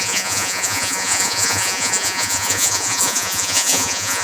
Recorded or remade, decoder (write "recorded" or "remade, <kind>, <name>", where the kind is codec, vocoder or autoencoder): remade, vocoder, Vocos